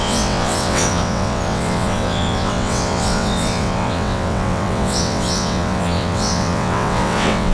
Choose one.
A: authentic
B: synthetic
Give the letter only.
B